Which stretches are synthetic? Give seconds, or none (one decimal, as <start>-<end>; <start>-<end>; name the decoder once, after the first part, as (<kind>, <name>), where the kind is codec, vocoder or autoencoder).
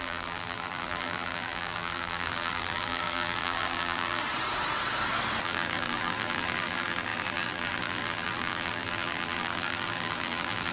0.0-4.2 (vocoder, BigVGAN v2); 5.4-10.7